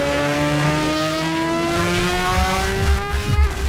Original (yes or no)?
no